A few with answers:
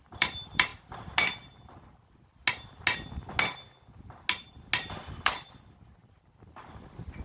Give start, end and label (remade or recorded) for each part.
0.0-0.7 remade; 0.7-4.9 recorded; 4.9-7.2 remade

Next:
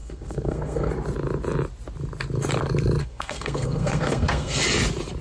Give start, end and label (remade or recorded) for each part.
0.0-0.9 remade; 0.9-3.0 recorded; 3.0-4.6 remade; 4.6-5.2 recorded